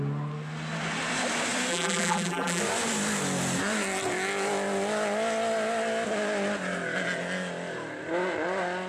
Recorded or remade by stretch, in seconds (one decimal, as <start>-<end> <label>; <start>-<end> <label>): 0.0-1.7 recorded; 1.7-2.6 remade; 2.6-8.9 recorded